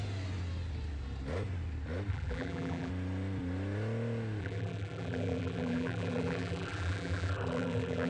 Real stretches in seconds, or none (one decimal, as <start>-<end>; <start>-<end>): 0.0-2.1; 2.9-4.4